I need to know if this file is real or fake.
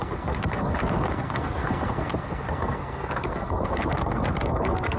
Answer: fake